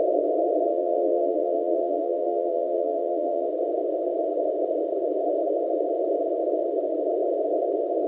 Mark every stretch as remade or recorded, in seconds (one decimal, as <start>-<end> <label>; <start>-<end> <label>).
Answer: 0.0-0.7 recorded; 0.7-3.5 remade; 3.5-8.1 recorded